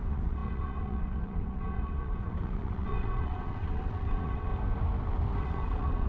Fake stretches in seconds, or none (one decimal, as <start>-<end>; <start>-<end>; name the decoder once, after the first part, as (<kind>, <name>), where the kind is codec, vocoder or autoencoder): 0.0-4.5 (vocoder, WaveNeXt); 5.4-6.1